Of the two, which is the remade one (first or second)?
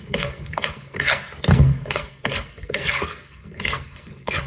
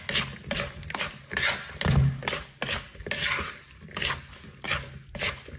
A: first